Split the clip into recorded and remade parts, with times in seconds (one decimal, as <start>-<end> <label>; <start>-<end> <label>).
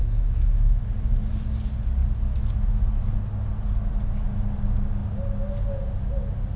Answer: 0.0-0.8 remade; 0.8-6.6 recorded